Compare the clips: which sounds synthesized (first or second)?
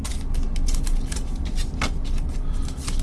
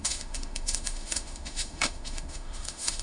second